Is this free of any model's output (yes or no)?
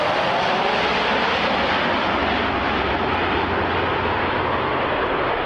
yes